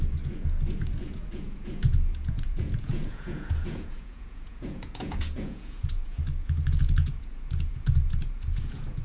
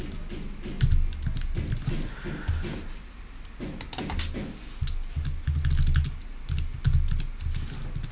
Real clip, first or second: second